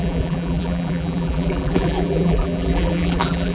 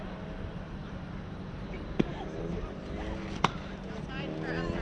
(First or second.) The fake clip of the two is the first